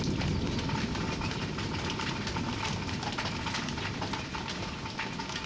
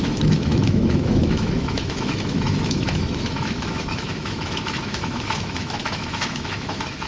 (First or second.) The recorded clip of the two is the first